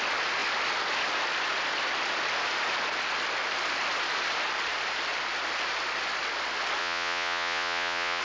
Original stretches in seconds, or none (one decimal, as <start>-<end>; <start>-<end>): 0.0-6.8